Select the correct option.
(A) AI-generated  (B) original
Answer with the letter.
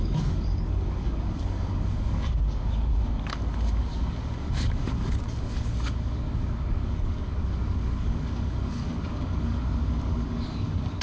A